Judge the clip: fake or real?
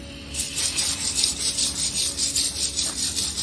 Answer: real